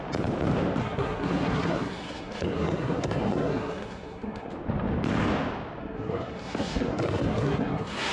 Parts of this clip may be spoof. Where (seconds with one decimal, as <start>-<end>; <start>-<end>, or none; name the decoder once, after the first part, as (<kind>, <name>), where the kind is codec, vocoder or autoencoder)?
0.8-4.5 (codec, SNAC); 5.8-8.1